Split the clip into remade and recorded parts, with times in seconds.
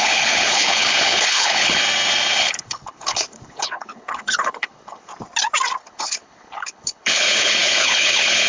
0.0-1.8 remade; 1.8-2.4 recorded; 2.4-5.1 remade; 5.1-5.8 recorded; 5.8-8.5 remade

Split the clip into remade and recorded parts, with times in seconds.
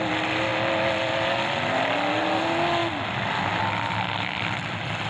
0.0-5.1 recorded